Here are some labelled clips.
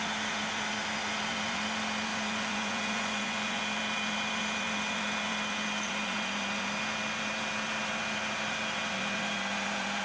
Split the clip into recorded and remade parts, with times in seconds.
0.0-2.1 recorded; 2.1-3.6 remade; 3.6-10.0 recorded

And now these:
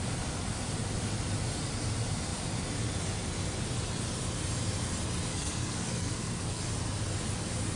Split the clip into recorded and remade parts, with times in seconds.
0.0-5.3 recorded; 5.3-6.6 remade; 6.6-7.8 recorded

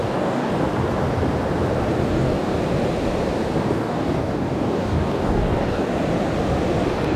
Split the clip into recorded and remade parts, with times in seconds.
0.0-0.5 remade; 0.5-2.1 recorded; 2.1-2.5 remade; 2.5-3.7 recorded; 3.7-5.9 remade; 5.9-6.8 recorded; 6.8-7.2 remade

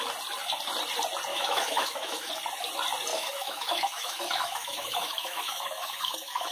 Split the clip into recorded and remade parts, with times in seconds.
0.0-1.3 recorded; 1.3-2.3 remade; 2.3-3.1 recorded; 3.1-6.5 remade

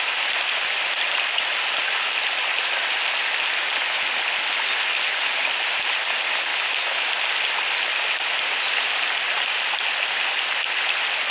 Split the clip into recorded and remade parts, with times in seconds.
0.0-6.5 recorded; 6.5-7.1 remade; 7.1-11.3 recorded

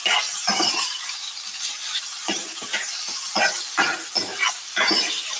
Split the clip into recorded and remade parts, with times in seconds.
0.0-0.4 recorded; 0.4-3.6 remade; 3.6-4.3 recorded; 4.3-5.4 remade

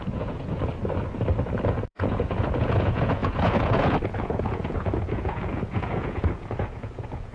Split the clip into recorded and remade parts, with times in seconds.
0.0-0.7 remade; 0.7-1.9 recorded; 1.9-7.3 remade

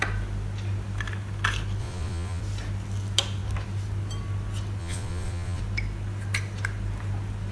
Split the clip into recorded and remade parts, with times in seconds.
0.0-1.8 recorded; 1.8-2.4 remade; 2.4-4.8 recorded; 4.8-5.6 remade; 5.6-7.5 recorded